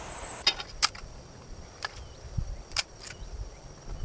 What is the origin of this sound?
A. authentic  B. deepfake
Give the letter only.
A